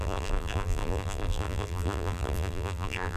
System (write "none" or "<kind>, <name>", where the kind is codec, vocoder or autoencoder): vocoder, BigVGAN v2